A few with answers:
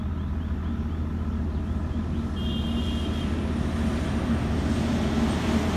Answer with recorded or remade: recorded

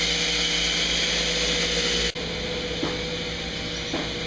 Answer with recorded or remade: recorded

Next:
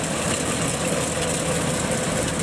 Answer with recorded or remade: recorded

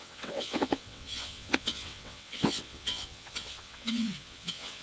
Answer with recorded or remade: remade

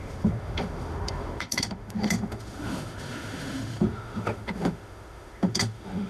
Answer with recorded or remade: remade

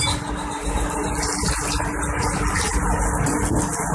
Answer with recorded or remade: recorded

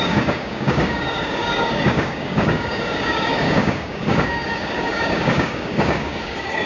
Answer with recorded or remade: remade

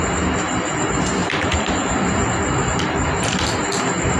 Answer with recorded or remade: recorded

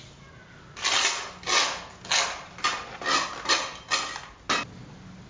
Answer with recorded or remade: recorded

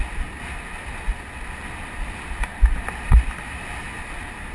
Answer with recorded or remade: recorded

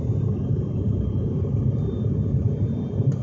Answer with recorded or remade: remade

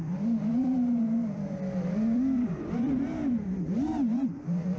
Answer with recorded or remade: remade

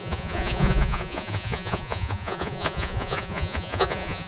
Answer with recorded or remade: remade